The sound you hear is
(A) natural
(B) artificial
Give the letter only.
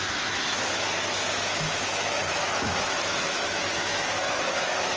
B